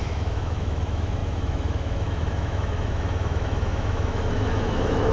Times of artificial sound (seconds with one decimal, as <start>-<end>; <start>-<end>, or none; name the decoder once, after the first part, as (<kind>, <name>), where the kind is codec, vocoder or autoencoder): 0.0-5.1 (autoencoder, DAC-VAE)